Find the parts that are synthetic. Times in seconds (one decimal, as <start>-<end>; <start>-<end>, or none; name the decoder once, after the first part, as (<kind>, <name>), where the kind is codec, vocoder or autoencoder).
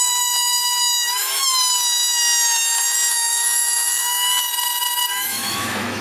0.0-1.5 (autoencoder, DAC-VAE); 3.1-4.3; 5.1-6.0